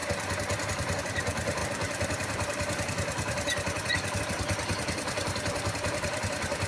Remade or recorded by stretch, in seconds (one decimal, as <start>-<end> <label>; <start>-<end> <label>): 0.0-1.0 recorded; 1.0-6.7 remade